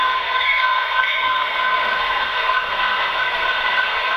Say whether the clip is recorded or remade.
remade